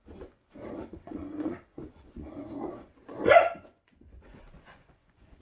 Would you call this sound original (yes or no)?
no